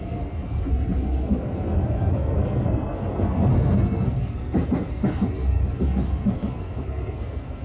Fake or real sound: fake